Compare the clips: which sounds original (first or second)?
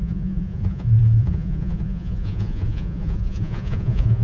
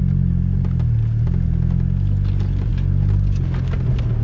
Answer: second